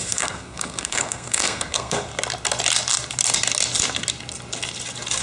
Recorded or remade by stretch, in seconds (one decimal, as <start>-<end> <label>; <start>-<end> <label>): 0.0-2.1 remade; 2.1-5.2 recorded